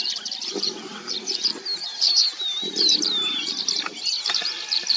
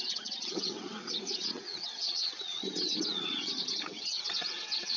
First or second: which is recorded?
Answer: first